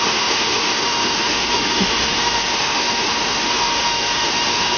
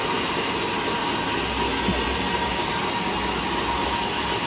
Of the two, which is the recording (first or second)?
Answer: second